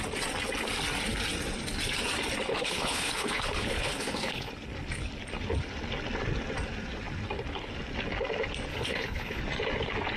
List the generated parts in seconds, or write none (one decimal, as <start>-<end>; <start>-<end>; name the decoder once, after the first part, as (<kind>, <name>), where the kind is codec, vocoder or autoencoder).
2.5-4.5 (codec, HILCodec); 8.7-9.4